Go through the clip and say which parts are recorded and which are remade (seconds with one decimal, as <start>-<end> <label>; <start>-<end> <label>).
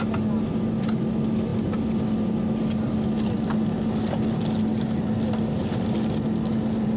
0.0-7.0 recorded